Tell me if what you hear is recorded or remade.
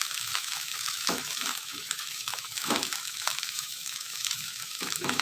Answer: remade